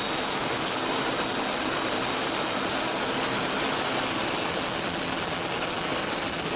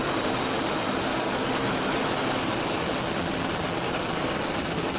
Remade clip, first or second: second